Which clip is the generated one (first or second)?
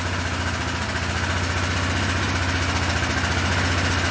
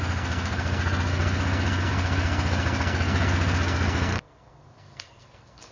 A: second